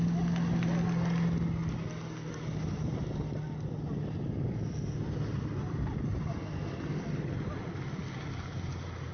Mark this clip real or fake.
real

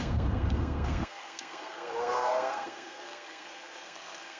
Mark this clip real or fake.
fake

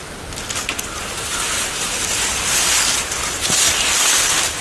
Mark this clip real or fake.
real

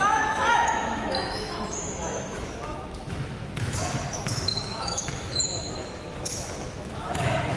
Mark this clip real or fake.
fake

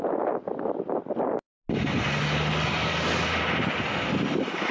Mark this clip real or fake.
real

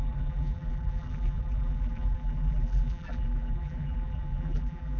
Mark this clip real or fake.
fake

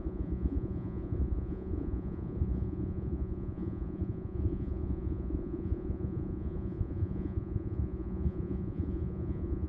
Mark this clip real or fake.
fake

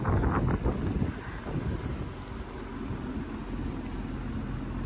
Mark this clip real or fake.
real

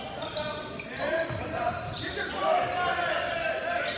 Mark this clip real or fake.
real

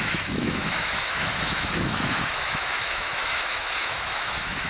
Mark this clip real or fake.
fake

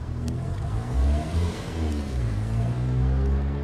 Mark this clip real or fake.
fake